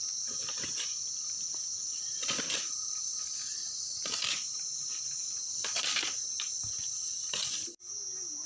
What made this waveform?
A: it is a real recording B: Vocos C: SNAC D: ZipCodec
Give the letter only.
A